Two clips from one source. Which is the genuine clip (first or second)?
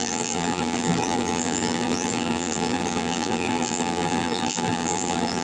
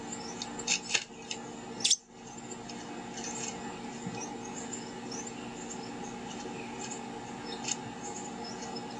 second